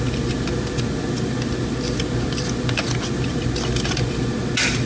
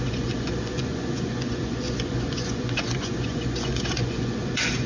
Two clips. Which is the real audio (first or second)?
first